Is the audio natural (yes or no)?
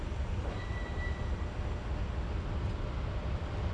yes